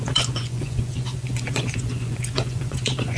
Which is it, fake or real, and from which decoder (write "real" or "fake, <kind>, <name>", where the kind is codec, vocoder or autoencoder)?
fake, vocoder, Vocos